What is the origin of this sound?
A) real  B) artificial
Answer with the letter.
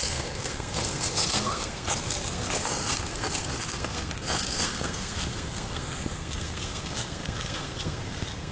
B